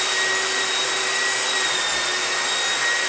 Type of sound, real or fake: real